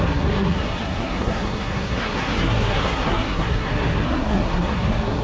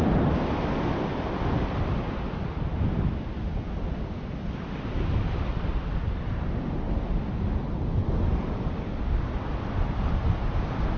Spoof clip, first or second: first